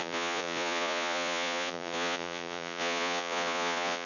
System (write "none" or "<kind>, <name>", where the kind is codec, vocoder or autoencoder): vocoder, Vocos